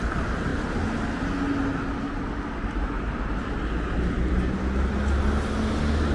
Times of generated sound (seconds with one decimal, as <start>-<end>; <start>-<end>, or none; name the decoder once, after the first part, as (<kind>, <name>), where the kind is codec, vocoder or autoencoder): none